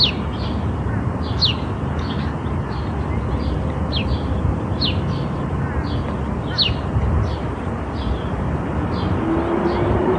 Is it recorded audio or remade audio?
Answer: recorded